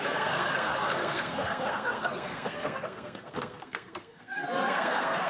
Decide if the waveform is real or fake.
fake